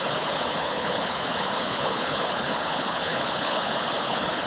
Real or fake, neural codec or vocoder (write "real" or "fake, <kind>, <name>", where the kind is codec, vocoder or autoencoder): fake, codec, HILCodec